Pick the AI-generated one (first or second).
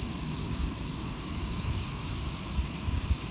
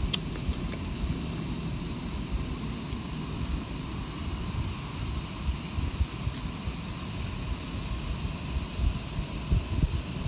first